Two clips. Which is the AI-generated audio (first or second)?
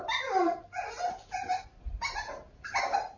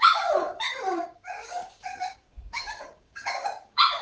second